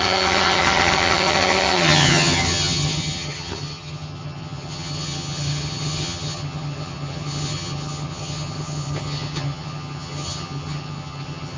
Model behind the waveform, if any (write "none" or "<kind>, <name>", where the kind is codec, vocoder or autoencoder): vocoder, HiFi-GAN